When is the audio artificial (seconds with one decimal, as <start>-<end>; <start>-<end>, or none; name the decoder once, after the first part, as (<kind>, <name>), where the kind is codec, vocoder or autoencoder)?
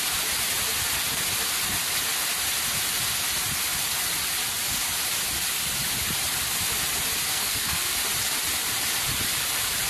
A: 7.3-7.9 (codec, SNAC)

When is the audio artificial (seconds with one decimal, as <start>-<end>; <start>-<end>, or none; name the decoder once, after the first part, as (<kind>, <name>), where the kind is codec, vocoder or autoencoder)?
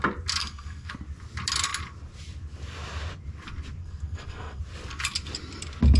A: 0.4-0.9 (codec, SNAC); 3.8-4.6